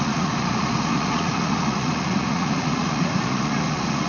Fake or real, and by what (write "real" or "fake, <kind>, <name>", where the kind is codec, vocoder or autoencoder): fake, vocoder, Vocos